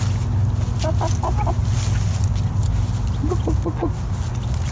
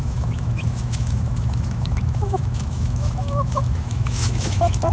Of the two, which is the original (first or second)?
first